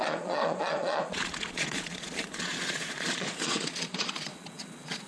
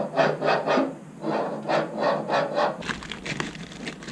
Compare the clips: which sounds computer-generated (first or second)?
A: first